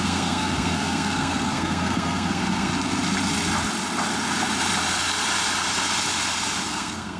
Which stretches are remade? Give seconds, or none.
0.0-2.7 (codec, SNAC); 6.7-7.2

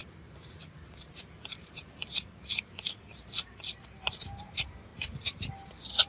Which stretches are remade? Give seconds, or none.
0.0-3.7 (vocoder, BigVGAN v2); 4.9-5.5

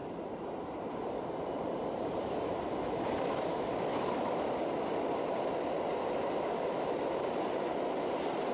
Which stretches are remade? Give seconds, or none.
3.9-4.5 (autoencoder, DAC-VAE)

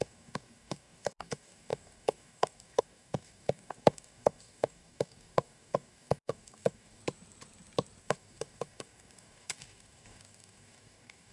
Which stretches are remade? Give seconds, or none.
0.0-7.0 (codec, DAC); 8.0-11.3